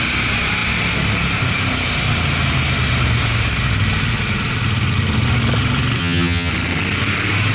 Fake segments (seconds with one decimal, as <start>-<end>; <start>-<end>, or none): 6.0-6.5